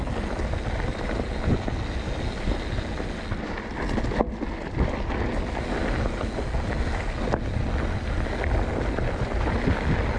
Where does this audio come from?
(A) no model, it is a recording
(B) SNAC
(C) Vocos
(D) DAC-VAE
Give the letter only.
A